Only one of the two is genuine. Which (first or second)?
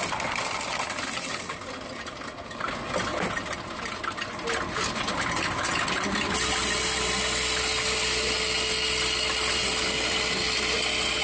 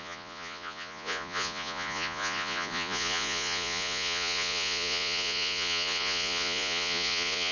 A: first